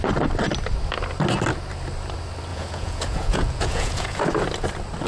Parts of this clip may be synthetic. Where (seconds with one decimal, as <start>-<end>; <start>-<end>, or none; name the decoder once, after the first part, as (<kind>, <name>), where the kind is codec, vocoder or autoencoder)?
2.5-4.2 (vocoder, Vocos)